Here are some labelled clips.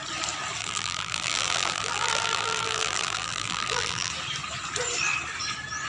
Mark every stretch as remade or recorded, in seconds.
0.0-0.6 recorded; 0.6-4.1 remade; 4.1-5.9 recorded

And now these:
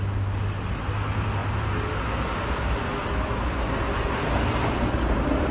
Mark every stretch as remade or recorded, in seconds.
0.0-5.5 recorded